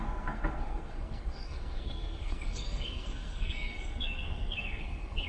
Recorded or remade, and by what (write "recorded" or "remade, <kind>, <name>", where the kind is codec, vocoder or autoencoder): remade, codec, SNAC